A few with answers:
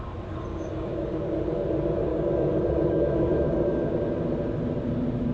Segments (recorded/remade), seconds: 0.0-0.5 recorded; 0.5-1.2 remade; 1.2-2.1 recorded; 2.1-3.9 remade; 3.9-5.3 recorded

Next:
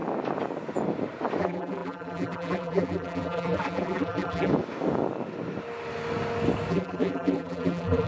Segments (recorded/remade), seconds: 0.0-1.4 recorded; 1.4-4.5 remade; 4.5-6.7 recorded; 6.7-8.1 remade

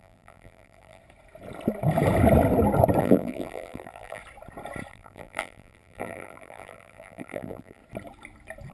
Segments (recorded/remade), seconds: 0.0-1.0 remade; 1.0-3.0 recorded; 3.0-4.2 remade; 4.2-4.9 recorded; 4.9-7.8 remade; 7.8-8.7 recorded